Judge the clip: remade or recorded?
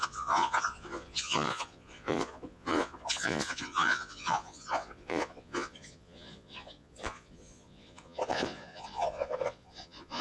remade